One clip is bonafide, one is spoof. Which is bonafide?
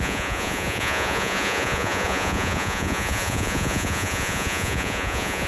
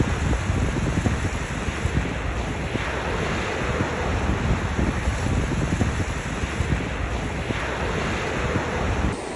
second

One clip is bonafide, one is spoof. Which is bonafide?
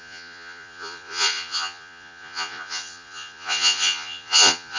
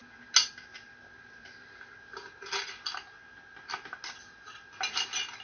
second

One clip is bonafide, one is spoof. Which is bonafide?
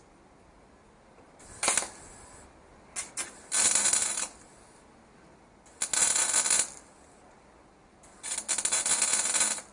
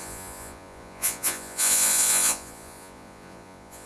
first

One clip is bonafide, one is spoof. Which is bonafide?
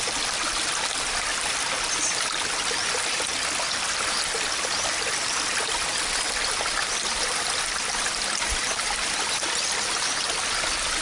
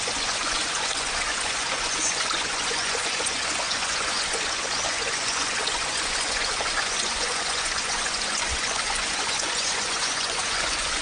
first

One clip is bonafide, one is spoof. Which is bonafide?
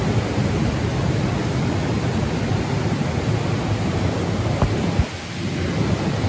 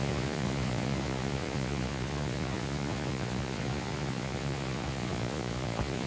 first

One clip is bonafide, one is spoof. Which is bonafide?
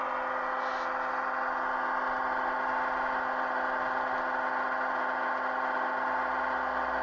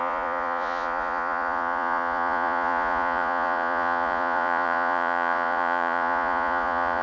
first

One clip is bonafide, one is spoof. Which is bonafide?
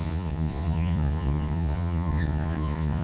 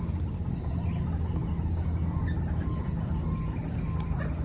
second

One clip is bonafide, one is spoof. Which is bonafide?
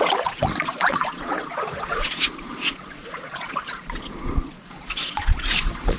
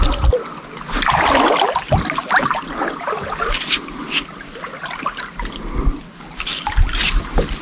second